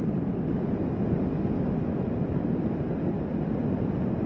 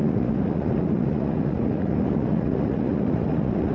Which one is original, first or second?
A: first